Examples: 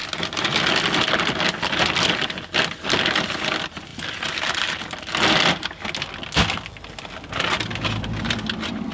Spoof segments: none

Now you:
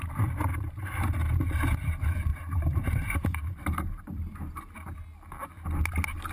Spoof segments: 0.5-1.0 (vocoder, BigVGAN v2); 2.3-4.6